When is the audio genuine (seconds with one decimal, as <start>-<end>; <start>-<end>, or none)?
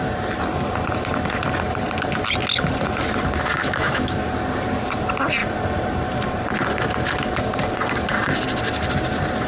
0.0-3.6; 4.3-9.5